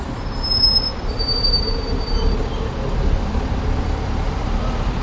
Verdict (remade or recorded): remade